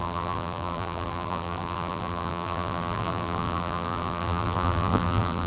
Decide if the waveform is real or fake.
fake